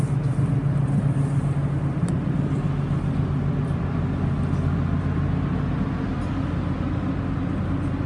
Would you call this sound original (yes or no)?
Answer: yes